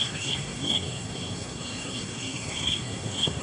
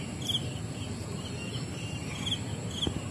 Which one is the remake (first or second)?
first